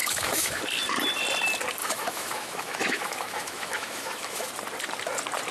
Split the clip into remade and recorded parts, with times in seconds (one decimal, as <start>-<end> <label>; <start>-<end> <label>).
0.0-0.6 remade; 0.6-1.8 recorded; 1.8-4.5 remade; 4.5-5.5 recorded